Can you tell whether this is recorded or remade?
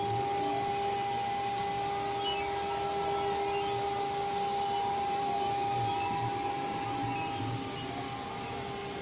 recorded